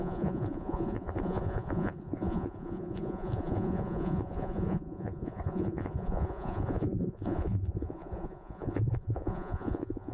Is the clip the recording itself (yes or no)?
no